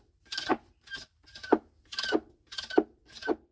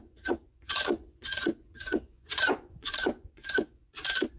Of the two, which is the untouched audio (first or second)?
first